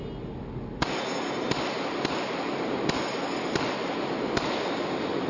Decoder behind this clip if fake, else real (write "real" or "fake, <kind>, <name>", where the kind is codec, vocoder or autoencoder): real